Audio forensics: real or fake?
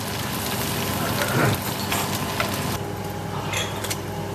real